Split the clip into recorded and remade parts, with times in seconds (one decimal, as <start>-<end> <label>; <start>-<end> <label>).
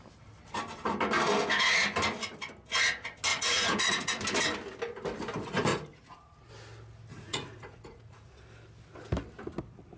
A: 0.0-3.3 recorded; 3.3-4.2 remade; 4.2-5.7 recorded; 5.7-6.5 remade; 6.5-7.1 recorded; 7.1-8.4 remade; 8.4-10.0 recorded